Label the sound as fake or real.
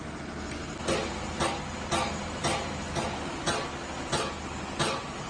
real